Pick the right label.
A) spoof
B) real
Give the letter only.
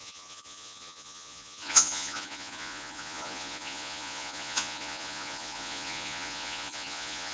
A